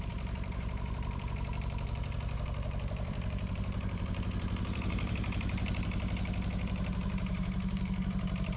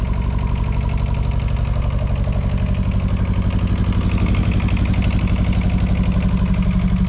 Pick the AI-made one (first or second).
first